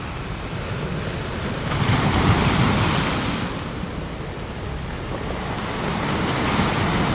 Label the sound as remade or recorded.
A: recorded